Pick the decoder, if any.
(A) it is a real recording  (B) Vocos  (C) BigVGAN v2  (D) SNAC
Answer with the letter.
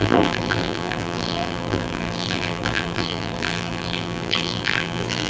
C